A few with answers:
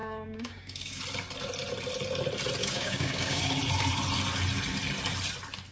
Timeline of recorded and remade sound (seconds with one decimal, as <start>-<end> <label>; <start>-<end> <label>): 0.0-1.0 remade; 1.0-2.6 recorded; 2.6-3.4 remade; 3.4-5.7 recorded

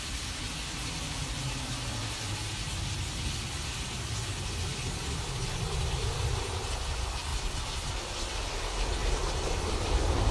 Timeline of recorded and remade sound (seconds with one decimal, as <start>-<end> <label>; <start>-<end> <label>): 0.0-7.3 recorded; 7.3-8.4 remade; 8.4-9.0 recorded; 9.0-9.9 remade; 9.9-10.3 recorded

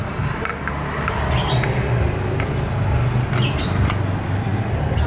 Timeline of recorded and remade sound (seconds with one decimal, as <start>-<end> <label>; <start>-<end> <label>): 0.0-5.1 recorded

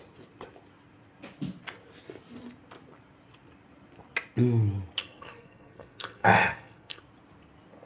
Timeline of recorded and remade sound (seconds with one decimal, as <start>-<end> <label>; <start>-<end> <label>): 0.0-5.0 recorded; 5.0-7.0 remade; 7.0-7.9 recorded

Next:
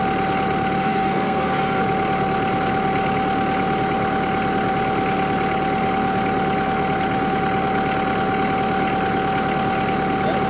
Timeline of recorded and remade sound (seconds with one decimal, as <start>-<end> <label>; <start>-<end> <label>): 0.0-0.8 recorded; 0.8-1.8 remade; 1.8-10.5 recorded